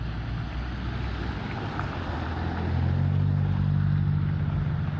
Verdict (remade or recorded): recorded